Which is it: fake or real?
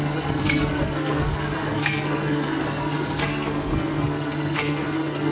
fake